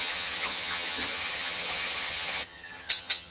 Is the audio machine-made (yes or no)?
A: yes